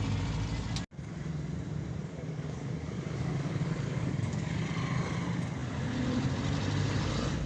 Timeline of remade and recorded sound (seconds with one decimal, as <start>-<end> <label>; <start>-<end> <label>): 0.0-2.0 recorded; 2.0-4.6 remade; 4.6-7.5 recorded